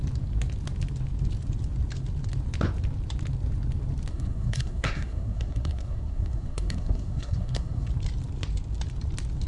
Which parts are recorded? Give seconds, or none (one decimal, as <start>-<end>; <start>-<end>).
0.0-4.1; 7.9-9.5